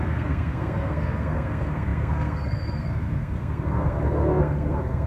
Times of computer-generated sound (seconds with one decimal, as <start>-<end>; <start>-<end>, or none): 0.0-5.1